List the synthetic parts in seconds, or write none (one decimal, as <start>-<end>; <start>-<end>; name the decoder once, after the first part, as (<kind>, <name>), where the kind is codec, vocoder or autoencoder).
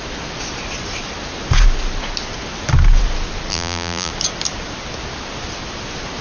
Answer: 3.5-4.1 (vocoder, BigVGAN v2)